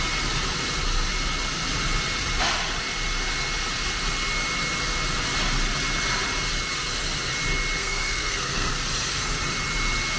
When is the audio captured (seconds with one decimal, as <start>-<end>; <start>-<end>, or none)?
0.0-7.8; 8.7-10.2